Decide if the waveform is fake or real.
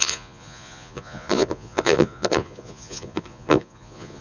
fake